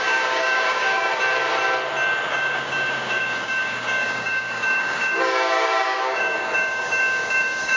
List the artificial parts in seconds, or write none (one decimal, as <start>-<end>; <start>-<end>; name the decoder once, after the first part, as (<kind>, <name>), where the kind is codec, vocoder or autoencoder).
0.0-1.1 (codec, DAC); 2.3-7.8